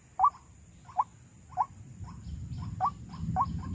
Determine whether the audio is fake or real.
real